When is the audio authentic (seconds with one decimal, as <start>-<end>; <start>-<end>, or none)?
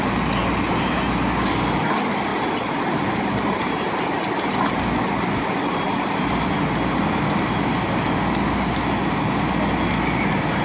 0.0-10.6